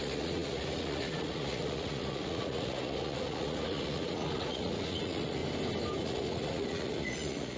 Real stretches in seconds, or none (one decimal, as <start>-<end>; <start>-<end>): 5.4-6.0